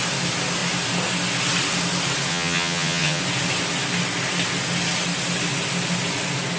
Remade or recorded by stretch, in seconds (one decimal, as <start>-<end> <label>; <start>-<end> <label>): 0.0-2.3 recorded; 2.3-3.2 remade; 3.2-6.6 recorded